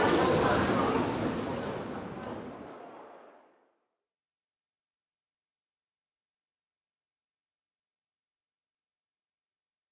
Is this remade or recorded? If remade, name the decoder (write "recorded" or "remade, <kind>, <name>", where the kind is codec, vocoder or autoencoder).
recorded